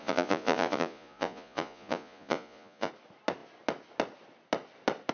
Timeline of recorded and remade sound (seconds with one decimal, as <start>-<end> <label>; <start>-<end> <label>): 0.0-2.9 remade; 2.9-5.1 recorded

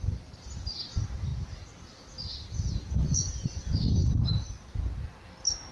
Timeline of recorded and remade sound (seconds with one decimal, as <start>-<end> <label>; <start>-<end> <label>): 0.0-3.0 recorded; 3.0-3.6 remade; 3.6-5.7 recorded

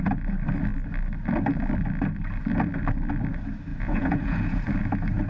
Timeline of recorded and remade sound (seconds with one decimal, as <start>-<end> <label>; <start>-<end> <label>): 0.0-3.7 recorded; 3.7-4.6 remade; 4.6-5.3 recorded